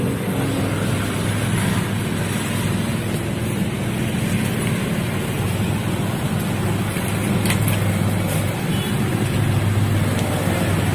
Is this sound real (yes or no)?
yes